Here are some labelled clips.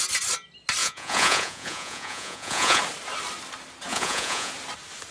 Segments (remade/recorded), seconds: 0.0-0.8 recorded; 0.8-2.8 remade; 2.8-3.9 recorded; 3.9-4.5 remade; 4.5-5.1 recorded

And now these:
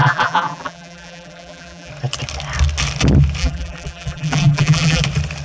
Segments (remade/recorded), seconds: 0.0-1.9 remade; 1.9-3.4 recorded; 3.4-5.0 remade; 5.0-5.4 recorded

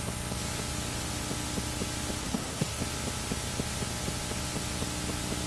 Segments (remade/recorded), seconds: 0.0-2.2 recorded; 2.2-2.8 remade; 2.8-5.5 recorded

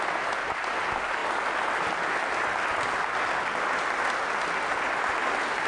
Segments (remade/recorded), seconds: 0.0-5.7 recorded

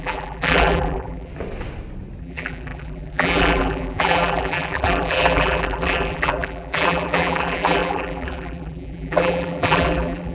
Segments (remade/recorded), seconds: 0.0-1.3 remade; 1.3-2.2 recorded; 2.2-10.3 remade